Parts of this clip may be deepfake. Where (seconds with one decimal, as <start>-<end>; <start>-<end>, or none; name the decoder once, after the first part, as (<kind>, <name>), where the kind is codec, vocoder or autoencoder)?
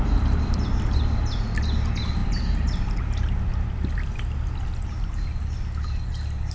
none